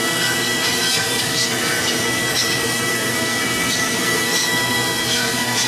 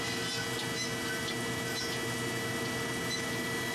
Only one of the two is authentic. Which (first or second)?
second